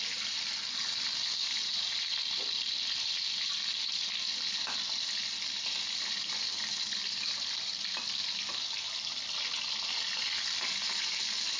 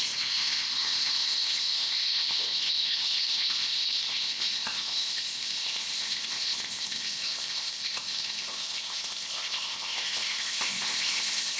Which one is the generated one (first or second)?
second